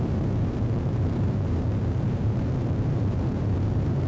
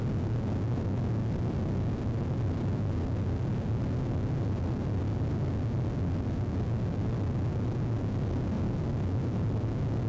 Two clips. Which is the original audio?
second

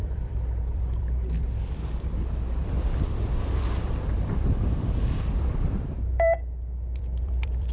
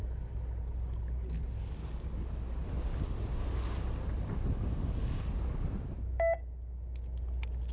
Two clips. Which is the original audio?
second